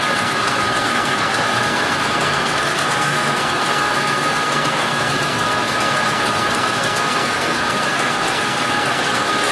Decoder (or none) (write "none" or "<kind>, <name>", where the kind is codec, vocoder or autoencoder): codec, SNAC